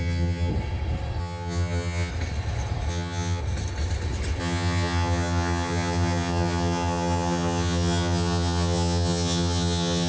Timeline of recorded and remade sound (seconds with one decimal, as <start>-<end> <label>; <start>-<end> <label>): 0.0-0.5 remade; 0.5-1.2 recorded; 1.2-2.1 remade; 2.1-2.9 recorded; 2.9-3.4 remade; 3.4-4.4 recorded; 4.4-10.1 remade